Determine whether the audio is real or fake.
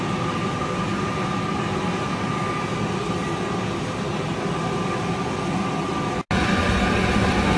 real